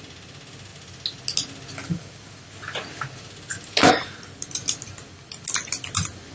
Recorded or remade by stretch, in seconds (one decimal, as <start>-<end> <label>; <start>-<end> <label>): 0.0-6.3 recorded